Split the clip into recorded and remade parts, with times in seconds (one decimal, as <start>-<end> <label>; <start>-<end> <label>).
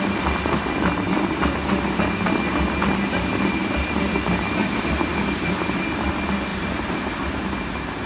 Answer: 0.0-3.6 recorded; 3.6-6.1 remade; 6.1-6.5 recorded; 6.5-7.3 remade; 7.3-8.1 recorded